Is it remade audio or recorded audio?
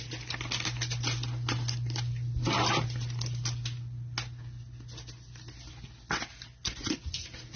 recorded